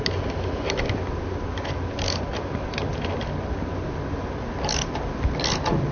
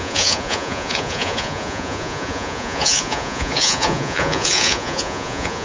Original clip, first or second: first